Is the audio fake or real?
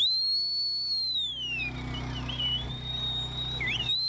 real